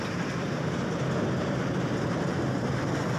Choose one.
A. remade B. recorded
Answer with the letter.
B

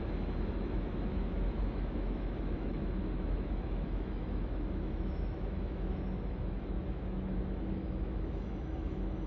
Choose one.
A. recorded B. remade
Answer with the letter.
B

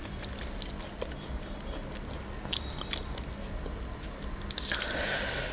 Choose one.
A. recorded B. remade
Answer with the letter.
A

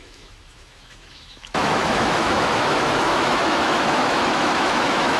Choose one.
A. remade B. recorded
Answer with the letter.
A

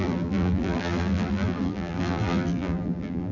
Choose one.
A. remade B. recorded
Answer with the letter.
A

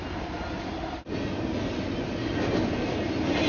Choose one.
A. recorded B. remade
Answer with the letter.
A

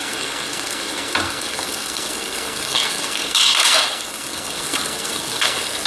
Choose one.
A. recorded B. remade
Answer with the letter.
B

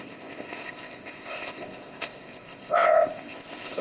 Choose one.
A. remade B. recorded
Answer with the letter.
A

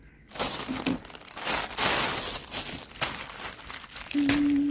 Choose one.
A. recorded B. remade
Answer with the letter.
A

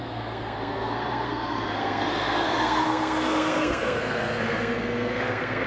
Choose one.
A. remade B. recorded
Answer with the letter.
A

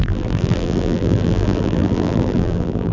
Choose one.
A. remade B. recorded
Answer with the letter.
A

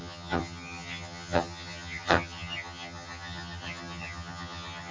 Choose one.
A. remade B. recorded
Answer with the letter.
A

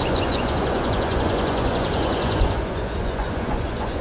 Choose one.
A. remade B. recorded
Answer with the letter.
A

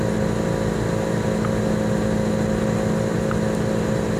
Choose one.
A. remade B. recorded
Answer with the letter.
B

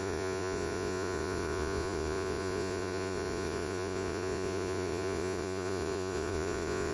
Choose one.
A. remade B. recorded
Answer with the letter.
A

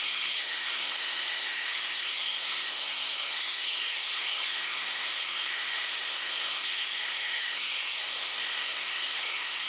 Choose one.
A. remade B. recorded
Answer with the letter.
A